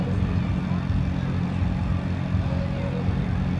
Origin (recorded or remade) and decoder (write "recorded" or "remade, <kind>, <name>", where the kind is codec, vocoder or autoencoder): recorded